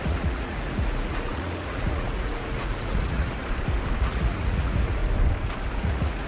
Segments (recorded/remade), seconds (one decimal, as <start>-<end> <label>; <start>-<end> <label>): 0.0-3.4 remade; 3.4-4.0 recorded; 4.0-5.0 remade; 5.0-5.7 recorded; 5.7-6.3 remade